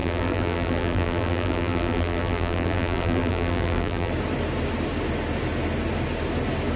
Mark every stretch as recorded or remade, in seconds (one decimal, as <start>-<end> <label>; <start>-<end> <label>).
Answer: 0.0-4.1 remade; 4.1-6.8 recorded